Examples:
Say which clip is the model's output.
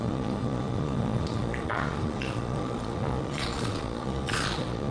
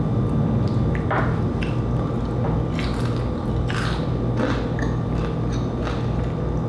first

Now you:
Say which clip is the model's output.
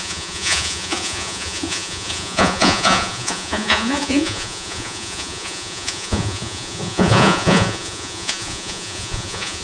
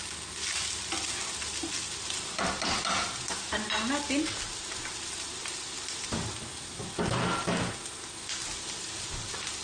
first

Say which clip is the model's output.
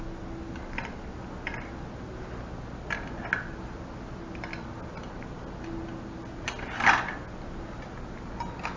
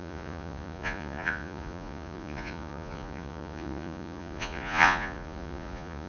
second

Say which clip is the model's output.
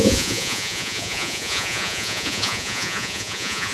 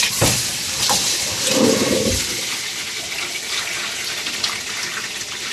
first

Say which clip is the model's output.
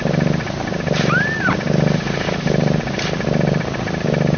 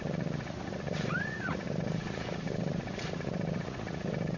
second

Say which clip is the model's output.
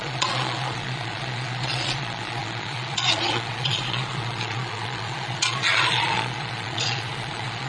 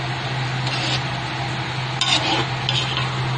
first